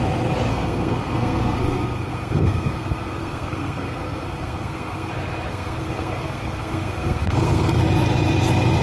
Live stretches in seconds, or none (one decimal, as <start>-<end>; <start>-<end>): 0.0-0.5; 5.1-5.5; 7.8-8.8